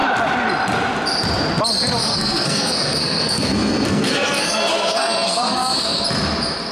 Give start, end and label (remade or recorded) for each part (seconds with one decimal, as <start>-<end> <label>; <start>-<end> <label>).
0.0-2.0 recorded; 2.0-6.0 remade; 6.0-6.7 recorded